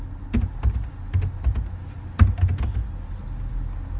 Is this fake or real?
real